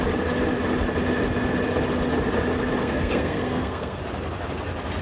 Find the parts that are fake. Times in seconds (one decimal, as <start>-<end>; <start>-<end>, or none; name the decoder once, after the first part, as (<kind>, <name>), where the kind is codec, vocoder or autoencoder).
2.8-4.0 (codec, SNAC)